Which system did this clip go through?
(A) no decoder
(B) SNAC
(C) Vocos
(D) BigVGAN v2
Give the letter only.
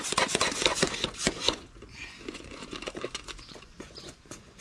C